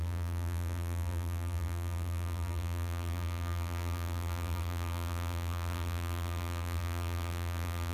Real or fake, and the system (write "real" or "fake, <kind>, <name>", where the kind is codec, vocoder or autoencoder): fake, vocoder, BigVGAN v2